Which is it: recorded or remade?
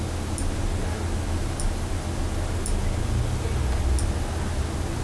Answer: recorded